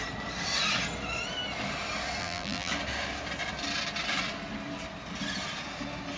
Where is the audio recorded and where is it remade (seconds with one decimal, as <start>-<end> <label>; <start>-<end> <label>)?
0.0-2.2 recorded; 2.2-2.7 remade; 2.7-6.2 recorded